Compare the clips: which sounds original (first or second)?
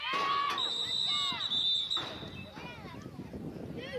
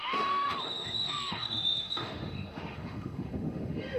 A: first